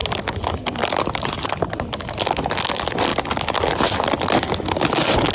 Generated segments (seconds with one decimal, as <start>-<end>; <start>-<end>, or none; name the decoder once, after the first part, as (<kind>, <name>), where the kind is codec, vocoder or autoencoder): none